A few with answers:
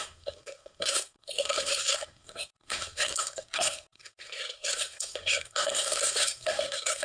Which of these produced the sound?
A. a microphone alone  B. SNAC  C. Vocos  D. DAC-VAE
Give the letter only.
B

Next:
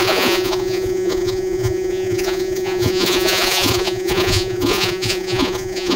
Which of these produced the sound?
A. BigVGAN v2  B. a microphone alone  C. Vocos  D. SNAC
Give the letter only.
C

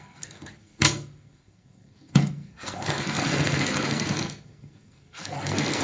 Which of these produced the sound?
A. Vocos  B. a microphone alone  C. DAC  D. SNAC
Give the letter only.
D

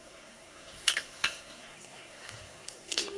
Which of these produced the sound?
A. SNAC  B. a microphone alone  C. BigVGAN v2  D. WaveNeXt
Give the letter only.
A